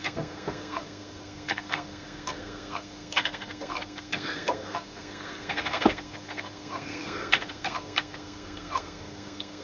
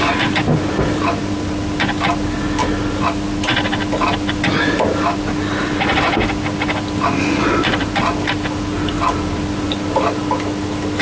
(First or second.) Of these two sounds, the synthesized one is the first